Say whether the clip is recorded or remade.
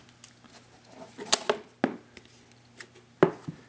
recorded